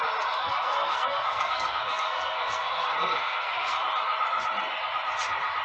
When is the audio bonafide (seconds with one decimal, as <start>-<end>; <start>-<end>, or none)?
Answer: 0.0-0.4; 3.8-5.6